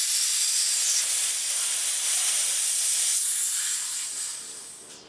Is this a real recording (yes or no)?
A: yes